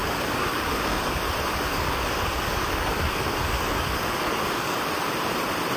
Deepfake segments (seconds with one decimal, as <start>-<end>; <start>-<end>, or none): 0.0-1.2; 1.7-4.8